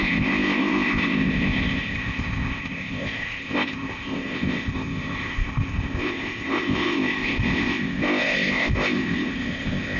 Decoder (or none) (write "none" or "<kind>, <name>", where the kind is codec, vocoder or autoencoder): codec, ZipCodec